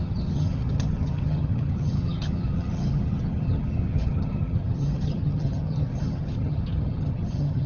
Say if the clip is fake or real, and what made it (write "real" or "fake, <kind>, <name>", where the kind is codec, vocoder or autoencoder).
fake, vocoder, HiFi-GAN